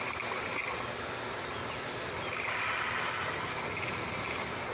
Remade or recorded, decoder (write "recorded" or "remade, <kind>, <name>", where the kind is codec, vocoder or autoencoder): recorded